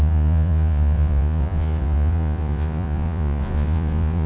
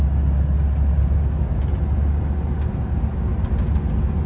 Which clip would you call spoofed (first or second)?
first